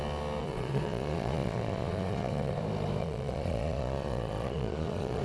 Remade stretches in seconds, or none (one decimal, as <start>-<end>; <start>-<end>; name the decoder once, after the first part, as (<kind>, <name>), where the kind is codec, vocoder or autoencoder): 0.4-2.6 (vocoder, Vocos); 3.0-5.2